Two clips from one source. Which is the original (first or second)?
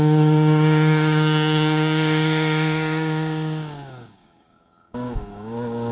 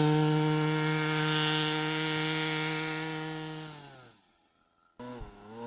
second